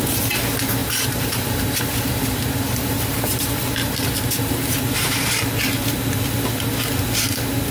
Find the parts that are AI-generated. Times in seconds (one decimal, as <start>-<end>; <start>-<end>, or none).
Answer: 0.8-5.4